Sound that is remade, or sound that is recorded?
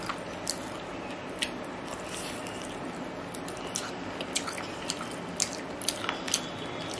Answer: recorded